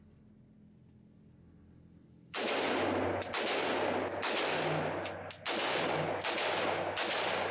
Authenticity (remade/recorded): recorded